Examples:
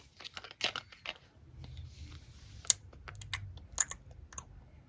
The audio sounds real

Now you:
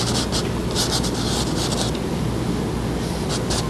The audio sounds real